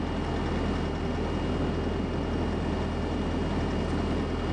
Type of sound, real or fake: real